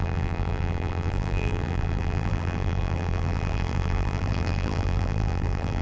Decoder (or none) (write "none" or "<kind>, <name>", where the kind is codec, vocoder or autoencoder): vocoder, BigVGAN v2